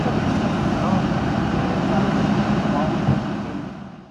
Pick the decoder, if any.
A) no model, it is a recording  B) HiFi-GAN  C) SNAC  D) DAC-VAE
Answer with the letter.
A